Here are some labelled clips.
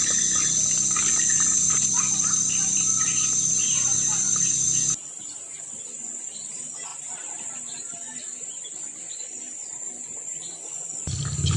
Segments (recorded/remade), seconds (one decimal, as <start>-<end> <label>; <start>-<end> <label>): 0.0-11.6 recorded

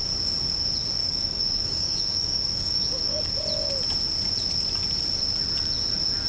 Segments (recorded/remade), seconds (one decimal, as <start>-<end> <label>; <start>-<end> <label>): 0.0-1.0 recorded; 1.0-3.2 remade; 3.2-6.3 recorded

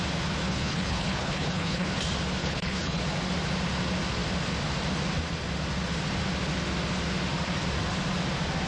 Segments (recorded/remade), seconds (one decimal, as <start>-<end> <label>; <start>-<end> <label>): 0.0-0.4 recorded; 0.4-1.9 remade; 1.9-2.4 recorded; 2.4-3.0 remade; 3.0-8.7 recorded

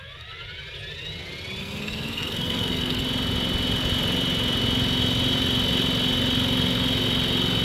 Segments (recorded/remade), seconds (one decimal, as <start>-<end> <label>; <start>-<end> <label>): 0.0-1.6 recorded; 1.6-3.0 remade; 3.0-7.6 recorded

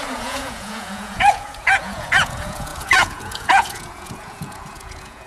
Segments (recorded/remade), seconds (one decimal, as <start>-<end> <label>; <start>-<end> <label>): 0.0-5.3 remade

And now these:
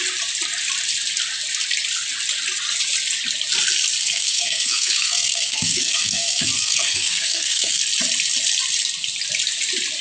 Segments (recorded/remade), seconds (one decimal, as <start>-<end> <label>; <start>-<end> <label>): 0.0-4.0 recorded; 4.0-7.8 remade; 7.8-10.0 recorded